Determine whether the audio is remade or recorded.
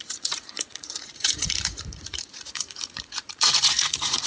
remade